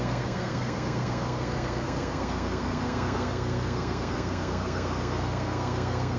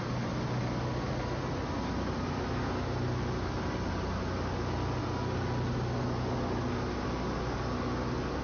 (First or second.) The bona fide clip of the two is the second